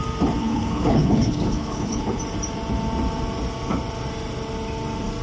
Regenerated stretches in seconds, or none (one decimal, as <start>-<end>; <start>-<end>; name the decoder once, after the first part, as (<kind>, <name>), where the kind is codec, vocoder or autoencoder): 0.4-2.2 (codec, HILCodec)